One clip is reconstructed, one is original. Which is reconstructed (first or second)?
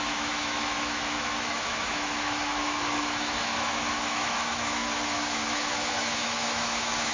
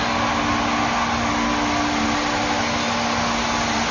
first